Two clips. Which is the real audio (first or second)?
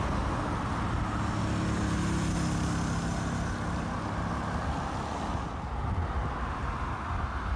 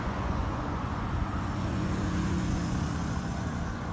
first